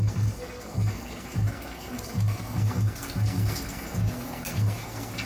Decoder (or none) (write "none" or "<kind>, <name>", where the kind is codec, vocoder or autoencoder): codec, SNAC